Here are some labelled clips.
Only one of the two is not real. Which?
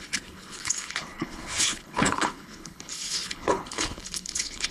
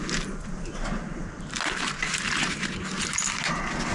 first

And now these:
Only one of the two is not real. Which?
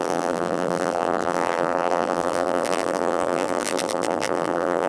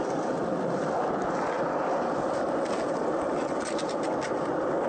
first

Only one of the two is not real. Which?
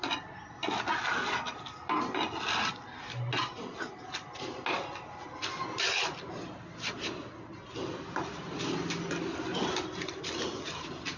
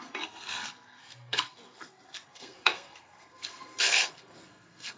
second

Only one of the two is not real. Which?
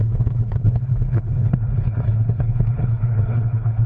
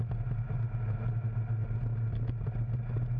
first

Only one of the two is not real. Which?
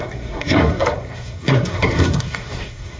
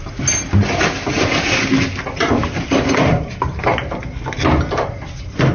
first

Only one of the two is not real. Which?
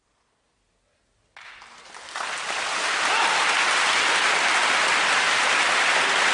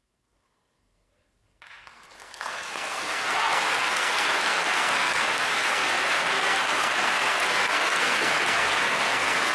second